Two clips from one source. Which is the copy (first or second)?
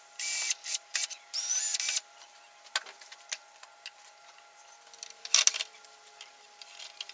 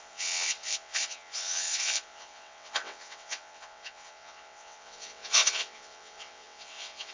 second